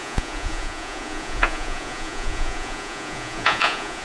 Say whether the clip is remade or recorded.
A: remade